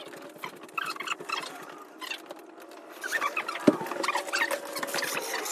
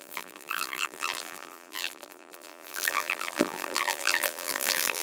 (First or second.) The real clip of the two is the first